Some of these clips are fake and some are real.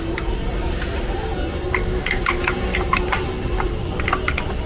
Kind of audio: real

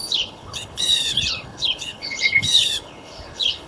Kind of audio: fake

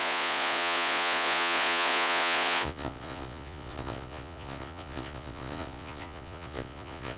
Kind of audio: fake